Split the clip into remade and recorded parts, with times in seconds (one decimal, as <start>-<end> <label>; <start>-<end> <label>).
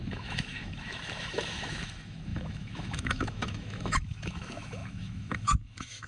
0.0-6.1 remade